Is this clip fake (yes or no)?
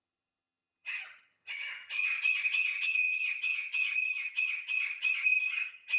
yes